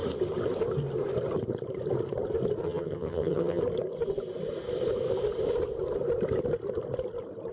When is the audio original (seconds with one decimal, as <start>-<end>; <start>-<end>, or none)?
0.0-2.6; 3.6-7.5